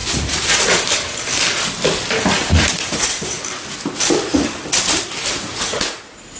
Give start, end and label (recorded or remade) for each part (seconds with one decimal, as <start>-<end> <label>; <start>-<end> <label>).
0.0-0.8 remade; 0.8-2.5 recorded; 2.5-3.4 remade; 3.4-5.3 recorded; 5.3-6.4 remade